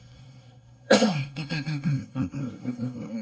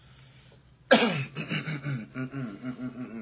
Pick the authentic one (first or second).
second